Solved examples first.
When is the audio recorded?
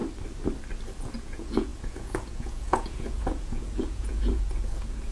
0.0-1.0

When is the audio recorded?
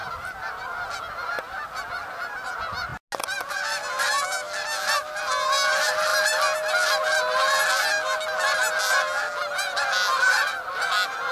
0.0-11.3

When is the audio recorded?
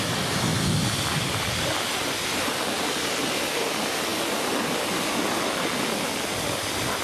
0.0-7.0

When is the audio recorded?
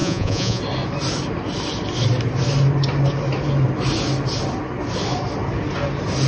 0.6-6.3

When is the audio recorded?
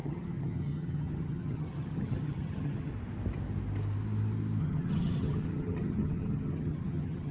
2.9-4.6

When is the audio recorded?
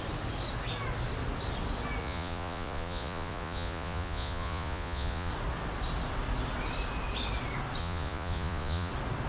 0.0-2.0; 5.3-7.8; 8.9-9.3